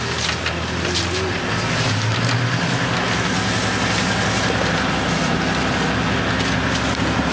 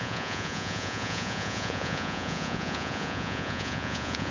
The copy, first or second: second